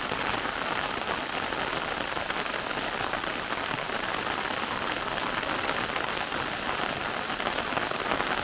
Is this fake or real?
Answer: real